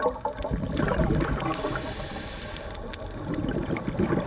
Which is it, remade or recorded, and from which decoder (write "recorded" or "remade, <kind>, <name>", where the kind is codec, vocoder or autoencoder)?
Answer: remade, vocoder, BigVGAN v2